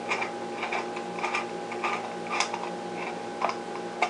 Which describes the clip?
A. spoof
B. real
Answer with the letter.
B